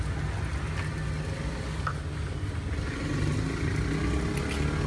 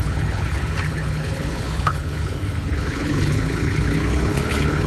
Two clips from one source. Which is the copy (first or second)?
second